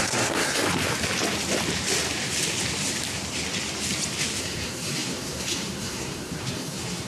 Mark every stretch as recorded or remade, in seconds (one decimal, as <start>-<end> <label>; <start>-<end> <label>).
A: 0.0-0.6 remade; 0.6-4.4 recorded; 4.4-7.1 remade